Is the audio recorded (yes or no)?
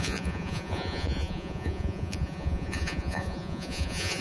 no